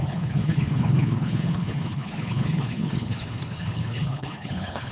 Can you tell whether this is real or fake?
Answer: fake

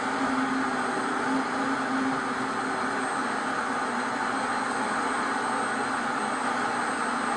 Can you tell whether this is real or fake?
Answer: real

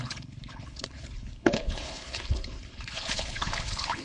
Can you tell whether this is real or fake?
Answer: fake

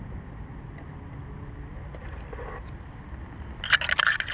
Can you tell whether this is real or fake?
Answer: real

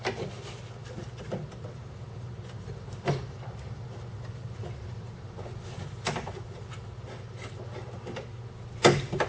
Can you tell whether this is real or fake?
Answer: real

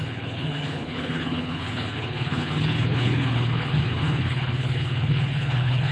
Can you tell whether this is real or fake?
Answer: fake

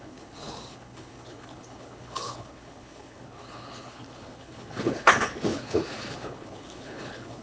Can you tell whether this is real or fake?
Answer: fake